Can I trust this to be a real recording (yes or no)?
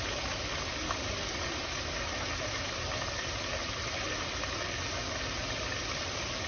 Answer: yes